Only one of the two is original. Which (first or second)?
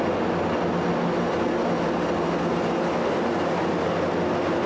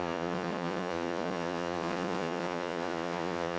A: first